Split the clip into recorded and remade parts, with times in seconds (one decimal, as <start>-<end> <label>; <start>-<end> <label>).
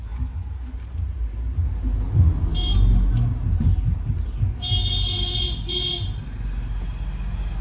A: 0.0-7.6 recorded